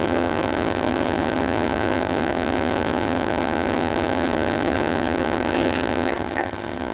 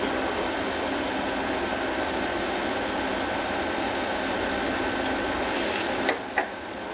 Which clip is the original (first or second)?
second